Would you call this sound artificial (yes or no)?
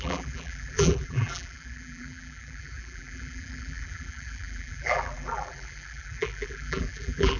yes